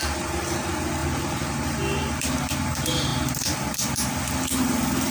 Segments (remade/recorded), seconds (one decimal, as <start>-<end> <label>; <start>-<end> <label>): 0.0-5.1 remade